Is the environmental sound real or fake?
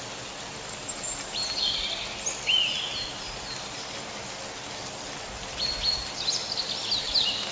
real